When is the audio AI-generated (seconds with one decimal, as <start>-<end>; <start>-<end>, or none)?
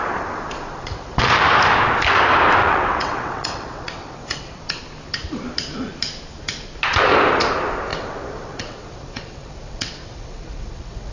0.7-1.4; 2.6-4.6; 7.9-11.1